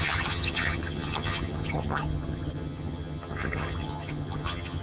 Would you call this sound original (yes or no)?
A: no